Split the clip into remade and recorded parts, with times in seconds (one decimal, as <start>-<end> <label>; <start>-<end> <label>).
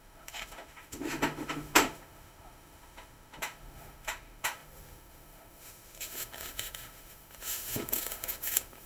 0.0-8.9 remade